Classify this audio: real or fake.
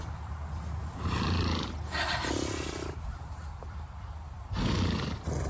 real